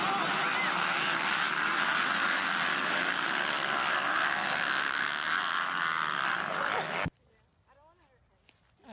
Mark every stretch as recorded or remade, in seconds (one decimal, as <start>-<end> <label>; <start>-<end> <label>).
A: 0.0-8.9 recorded